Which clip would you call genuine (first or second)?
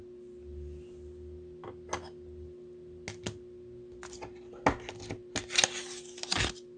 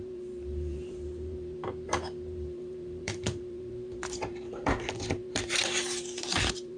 first